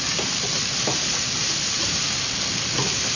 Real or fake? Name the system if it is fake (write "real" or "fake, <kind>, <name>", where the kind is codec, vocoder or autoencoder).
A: real